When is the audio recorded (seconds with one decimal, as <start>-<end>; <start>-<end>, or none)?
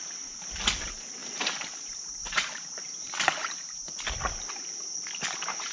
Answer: 0.0-1.2; 3.8-5.7